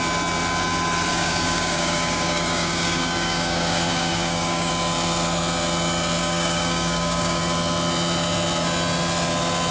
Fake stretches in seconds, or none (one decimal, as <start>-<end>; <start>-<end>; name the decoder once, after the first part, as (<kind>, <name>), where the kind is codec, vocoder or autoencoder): 1.1-4.7 (codec, DAC); 6.2-7.4